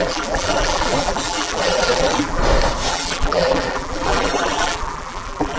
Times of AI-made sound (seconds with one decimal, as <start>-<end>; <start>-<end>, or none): 0.0-2.4; 2.9-5.6

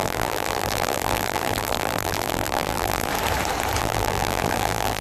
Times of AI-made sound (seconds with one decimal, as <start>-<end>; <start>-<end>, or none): 0.0-3.1; 3.8-5.0

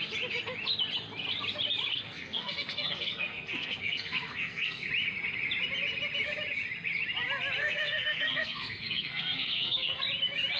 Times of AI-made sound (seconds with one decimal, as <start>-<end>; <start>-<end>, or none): 1.9-4.9; 7.6-10.0

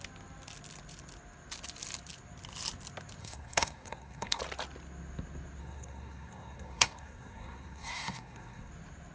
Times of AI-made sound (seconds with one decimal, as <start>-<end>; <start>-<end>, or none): 3.2-4.4; 5.6-8.7